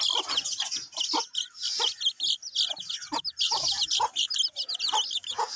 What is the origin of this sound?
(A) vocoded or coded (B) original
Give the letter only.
B